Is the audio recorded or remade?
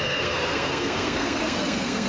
remade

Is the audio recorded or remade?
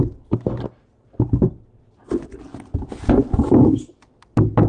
recorded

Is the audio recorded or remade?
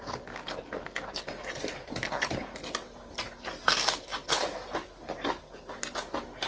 recorded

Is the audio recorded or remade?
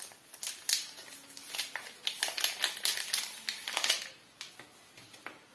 recorded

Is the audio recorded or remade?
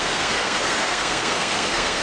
remade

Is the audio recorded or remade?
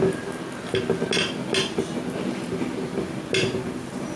recorded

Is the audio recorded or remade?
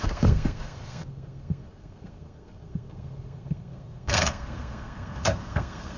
remade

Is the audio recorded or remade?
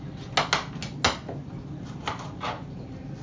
recorded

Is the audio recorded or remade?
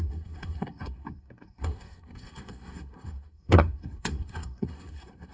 remade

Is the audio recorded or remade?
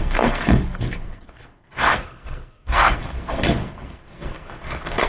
remade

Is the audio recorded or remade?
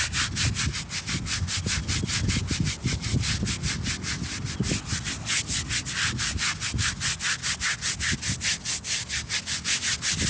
recorded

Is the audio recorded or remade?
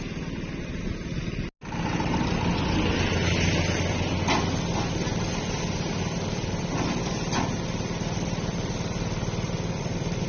recorded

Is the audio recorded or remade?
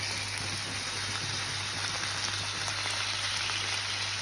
recorded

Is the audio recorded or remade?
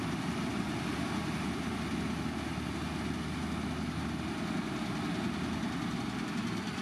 recorded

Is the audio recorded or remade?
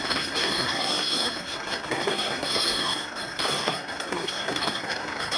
remade